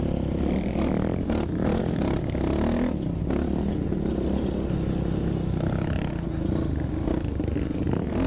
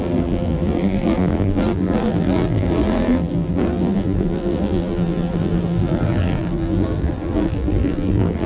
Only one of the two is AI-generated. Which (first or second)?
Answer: second